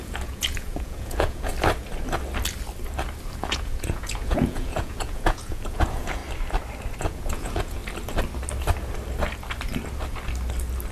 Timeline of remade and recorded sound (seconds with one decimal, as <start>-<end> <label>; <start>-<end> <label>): 0.0-1.5 remade; 1.5-3.4 recorded; 3.4-6.2 remade; 6.2-7.0 recorded; 7.0-7.8 remade; 7.8-10.9 recorded